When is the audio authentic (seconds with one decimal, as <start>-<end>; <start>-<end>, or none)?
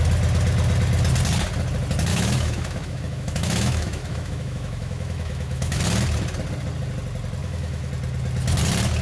0.0-2.1; 5.8-7.4; 7.9-9.0